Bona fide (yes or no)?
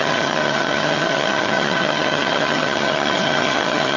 no